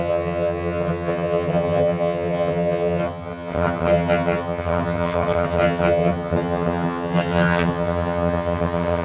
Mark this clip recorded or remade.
remade